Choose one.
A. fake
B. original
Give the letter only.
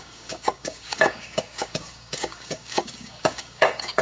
A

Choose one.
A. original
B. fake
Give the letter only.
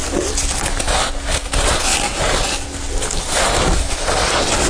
A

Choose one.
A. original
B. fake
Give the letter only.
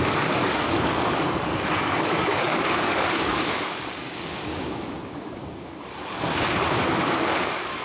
B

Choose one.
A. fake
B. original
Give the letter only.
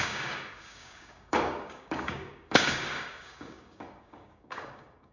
A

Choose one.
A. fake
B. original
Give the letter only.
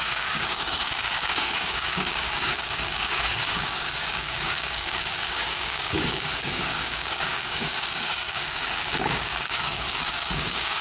A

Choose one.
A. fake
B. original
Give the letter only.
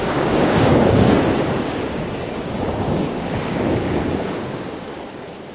A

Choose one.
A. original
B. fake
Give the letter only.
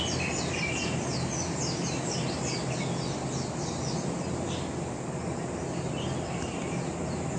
A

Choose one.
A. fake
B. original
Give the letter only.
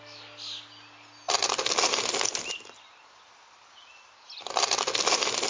B